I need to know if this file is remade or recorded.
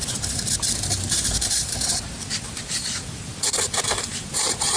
remade